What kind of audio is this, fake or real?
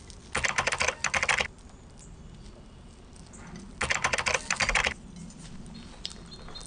real